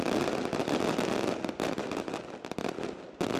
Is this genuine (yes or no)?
yes